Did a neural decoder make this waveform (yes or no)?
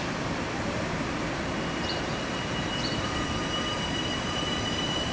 yes